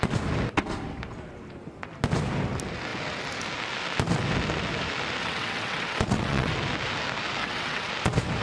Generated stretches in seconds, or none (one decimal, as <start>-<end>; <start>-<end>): 5.2-6.5; 7.4-7.9